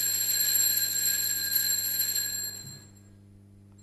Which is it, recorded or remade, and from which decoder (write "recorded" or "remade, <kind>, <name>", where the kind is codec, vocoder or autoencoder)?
recorded